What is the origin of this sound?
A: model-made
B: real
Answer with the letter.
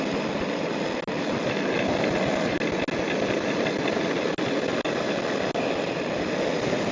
B